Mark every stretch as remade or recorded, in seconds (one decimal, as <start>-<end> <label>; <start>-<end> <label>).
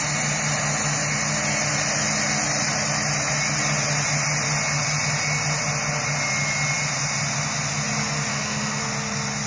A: 0.0-8.3 recorded; 8.3-8.8 remade; 8.8-9.5 recorded